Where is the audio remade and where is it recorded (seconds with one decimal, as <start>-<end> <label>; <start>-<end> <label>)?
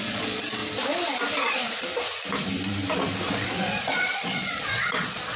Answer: 0.0-0.6 remade; 0.6-3.3 recorded; 3.3-5.4 remade